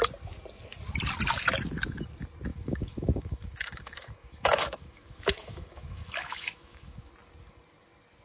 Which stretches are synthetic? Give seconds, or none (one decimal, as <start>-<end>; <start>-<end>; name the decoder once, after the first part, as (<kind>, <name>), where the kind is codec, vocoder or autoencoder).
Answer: 2.5-7.1 (autoencoder, DAC-VAE)